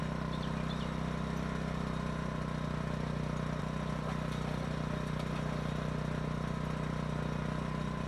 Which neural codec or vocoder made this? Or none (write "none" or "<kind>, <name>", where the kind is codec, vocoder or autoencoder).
none